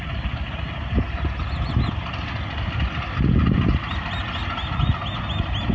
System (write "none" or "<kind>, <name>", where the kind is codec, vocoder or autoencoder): none